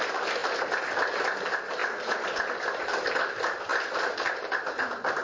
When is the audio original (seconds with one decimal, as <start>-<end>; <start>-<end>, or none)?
0.0-5.2